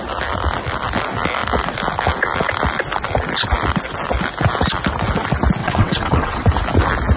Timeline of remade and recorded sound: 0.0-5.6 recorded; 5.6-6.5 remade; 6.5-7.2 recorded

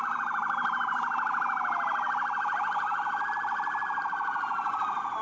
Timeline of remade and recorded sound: 0.0-5.2 recorded